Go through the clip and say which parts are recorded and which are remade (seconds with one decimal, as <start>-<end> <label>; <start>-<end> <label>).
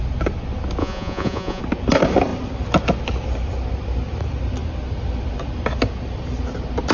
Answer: 0.0-0.8 recorded; 0.8-1.6 remade; 1.6-6.9 recorded